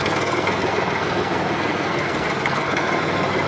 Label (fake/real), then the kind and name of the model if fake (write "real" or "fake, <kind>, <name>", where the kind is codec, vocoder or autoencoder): fake, codec, SNAC